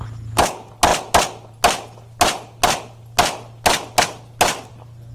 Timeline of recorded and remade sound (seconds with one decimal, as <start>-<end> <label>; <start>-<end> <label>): 0.0-5.1 recorded